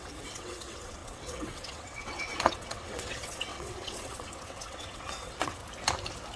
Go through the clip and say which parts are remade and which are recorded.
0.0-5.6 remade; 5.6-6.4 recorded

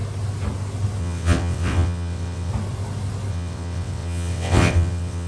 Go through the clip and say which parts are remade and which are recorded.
0.0-1.0 recorded; 1.0-2.5 remade; 2.5-3.3 recorded; 3.3-5.3 remade

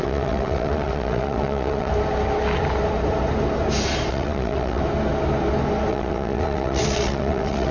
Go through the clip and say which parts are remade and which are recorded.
0.0-1.9 remade; 1.9-4.1 recorded; 4.1-4.8 remade; 4.8-5.9 recorded; 5.9-7.7 remade

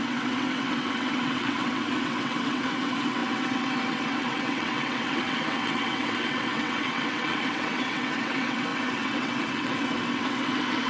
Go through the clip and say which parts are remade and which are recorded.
0.0-10.9 remade

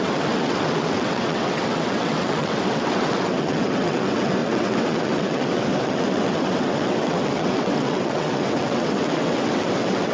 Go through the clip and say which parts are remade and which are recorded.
0.0-10.1 remade